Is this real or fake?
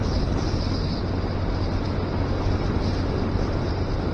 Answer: real